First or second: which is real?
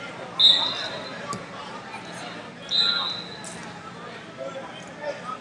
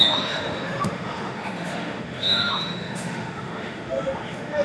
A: first